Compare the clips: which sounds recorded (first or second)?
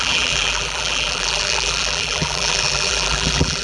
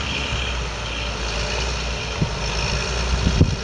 second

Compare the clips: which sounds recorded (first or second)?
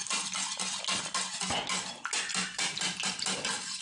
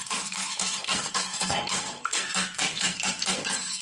first